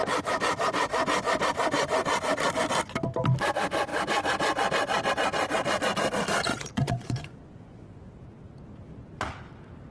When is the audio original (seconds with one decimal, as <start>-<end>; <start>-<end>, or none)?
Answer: 0.0-6.5; 8.0-9.9